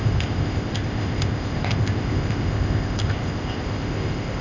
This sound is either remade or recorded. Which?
remade